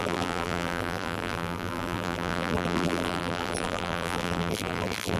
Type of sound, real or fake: fake